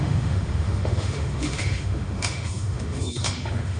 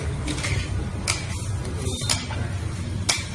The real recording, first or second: second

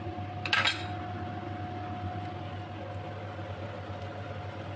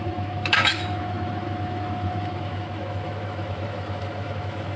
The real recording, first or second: first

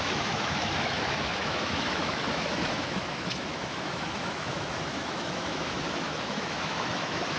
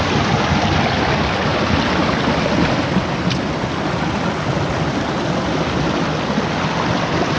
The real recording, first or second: second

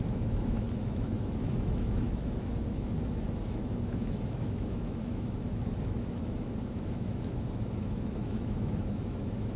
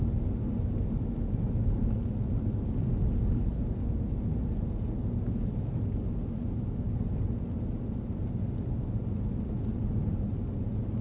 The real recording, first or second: second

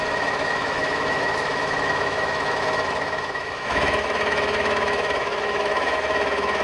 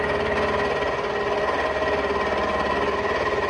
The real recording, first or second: second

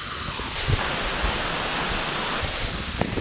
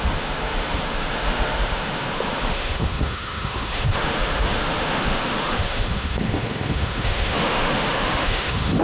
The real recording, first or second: first